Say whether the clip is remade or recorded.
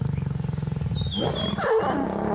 recorded